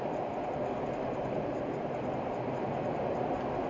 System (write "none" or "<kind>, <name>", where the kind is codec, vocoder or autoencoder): none